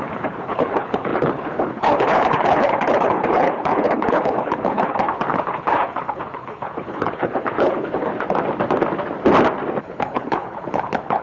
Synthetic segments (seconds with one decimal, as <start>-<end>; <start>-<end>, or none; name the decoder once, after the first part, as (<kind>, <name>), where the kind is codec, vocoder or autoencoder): 0.0-8.1 (codec, HILCodec); 9.8-11.2